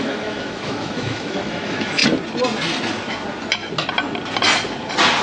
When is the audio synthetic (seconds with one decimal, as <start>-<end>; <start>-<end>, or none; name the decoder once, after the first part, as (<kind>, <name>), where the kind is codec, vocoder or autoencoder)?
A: 0.0-2.0 (autoencoder, DAC-VAE)